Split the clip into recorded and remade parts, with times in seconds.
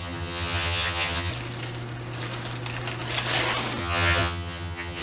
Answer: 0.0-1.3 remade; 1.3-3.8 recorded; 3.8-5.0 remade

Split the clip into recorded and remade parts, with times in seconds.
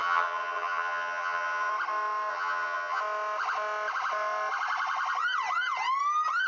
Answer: 0.0-1.7 remade; 1.7-2.3 recorded; 2.3-3.0 remade; 3.0-6.5 recorded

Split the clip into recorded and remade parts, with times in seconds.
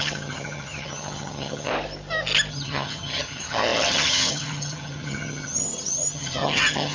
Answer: 0.0-1.7 remade; 1.7-2.5 recorded; 2.5-6.9 remade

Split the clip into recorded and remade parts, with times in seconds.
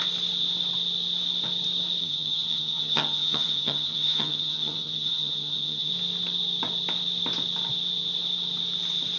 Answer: 0.0-2.0 recorded; 2.0-5.9 remade; 5.9-9.2 recorded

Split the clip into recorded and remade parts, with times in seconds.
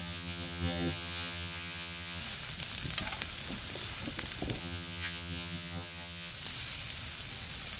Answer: 0.0-2.2 remade; 2.2-4.6 recorded; 4.6-6.3 remade; 6.3-7.8 recorded